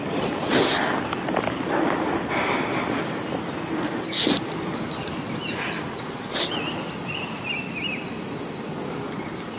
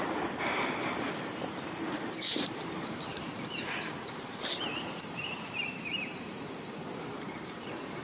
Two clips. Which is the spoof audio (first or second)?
second